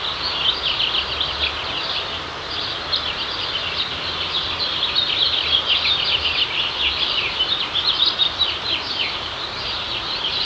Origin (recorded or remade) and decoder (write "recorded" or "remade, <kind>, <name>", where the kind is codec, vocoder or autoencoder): recorded